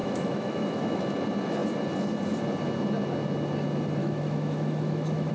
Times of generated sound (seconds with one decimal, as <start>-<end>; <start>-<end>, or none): 0.0-1.0; 4.0-5.3